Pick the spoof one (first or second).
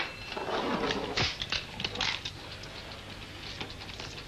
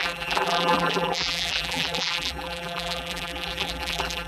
second